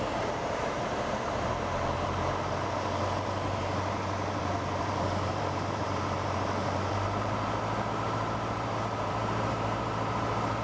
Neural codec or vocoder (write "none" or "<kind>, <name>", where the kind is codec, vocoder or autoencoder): vocoder, BigVGAN v2